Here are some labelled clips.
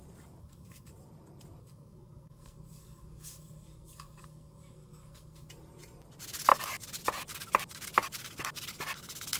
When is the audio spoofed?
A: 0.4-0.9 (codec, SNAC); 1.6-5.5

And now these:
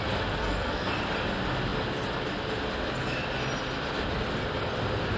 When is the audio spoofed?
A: 0.4-0.9 (codec, SNAC)

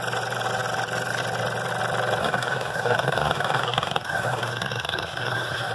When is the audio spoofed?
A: 2.2-5.7 (codec, SNAC)

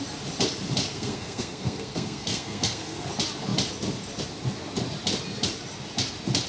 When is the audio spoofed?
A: 0.9-3.1 (codec, SNAC)